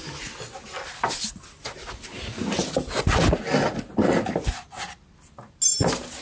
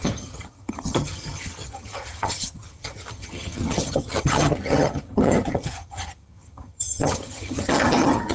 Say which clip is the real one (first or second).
first